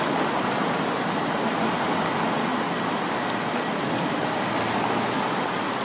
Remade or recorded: recorded